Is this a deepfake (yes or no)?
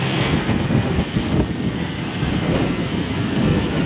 yes